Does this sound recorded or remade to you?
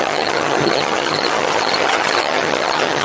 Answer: remade